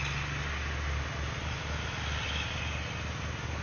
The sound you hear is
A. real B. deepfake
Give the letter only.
A